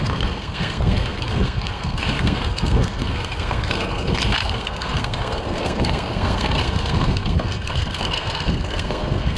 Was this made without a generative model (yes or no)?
no